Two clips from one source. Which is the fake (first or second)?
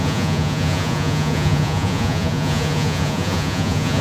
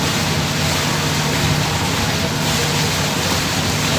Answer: first